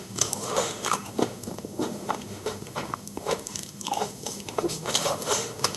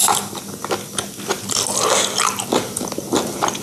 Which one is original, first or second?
second